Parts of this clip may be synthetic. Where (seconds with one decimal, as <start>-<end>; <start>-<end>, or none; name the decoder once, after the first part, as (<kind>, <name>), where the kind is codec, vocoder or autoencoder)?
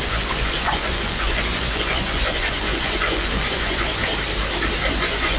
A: 0.0-4.0 (vocoder, Vocos); 4.9-5.4